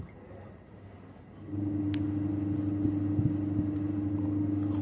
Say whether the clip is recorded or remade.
recorded